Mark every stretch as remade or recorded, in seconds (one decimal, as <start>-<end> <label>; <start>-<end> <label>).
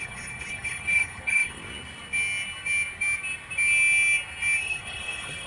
0.0-1.6 remade; 1.6-4.6 recorded; 4.6-5.5 remade